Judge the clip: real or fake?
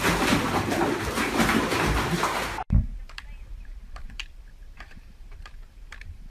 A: fake